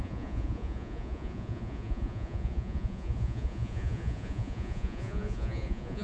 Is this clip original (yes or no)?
no